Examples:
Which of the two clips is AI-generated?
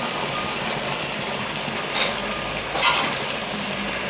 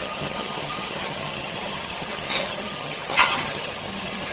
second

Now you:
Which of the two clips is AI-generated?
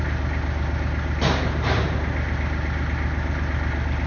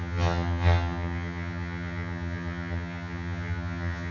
second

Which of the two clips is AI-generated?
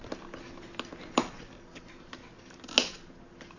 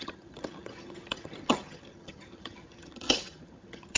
second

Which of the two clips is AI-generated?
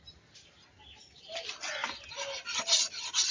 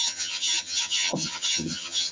second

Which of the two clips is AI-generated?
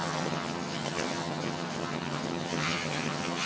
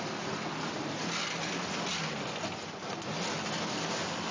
first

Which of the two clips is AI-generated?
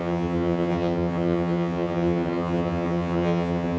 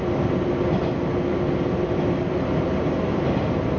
first